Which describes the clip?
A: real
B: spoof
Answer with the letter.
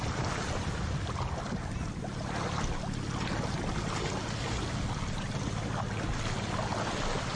A